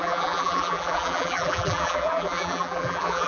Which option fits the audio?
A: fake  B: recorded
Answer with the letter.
A